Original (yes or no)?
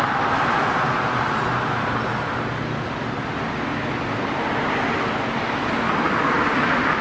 yes